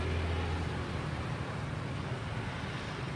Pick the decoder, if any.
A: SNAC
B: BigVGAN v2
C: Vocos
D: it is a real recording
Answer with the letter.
D